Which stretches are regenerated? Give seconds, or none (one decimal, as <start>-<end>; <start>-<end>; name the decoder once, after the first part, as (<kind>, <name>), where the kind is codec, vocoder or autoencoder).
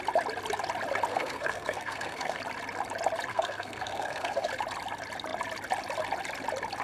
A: 1.1-2.4 (codec, SNAC); 3.3-4.5